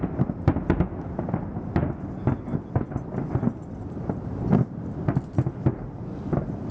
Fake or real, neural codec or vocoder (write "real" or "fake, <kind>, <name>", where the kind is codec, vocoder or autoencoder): real